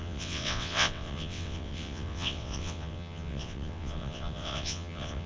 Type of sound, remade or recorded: remade